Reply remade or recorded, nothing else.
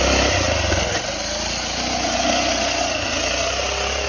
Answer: recorded